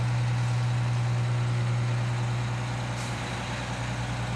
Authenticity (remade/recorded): recorded